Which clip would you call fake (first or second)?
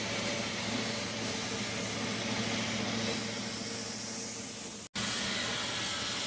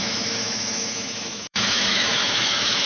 second